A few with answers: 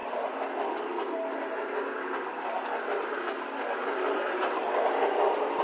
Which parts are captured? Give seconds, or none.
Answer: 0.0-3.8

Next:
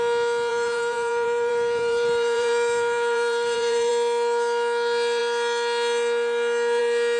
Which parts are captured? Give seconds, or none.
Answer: 0.0-0.5; 3.9-7.2

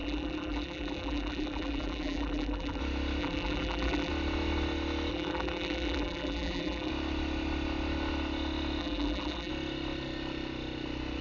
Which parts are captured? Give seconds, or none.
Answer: 2.8-3.2; 4.1-5.1; 6.9-8.8; 9.5-11.2

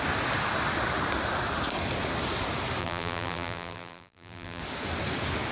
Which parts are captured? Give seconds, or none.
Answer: 0.0-2.8; 4.6-5.5

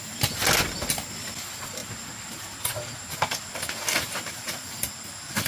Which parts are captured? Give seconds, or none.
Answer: 0.0-5.5

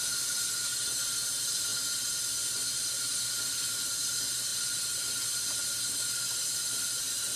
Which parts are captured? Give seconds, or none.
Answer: 0.0-7.4

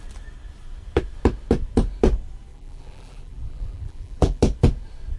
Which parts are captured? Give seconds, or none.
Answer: 0.0-2.5; 4.4-5.2